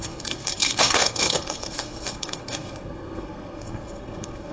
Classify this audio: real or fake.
fake